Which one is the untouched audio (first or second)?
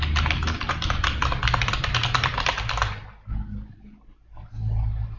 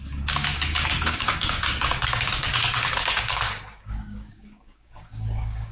first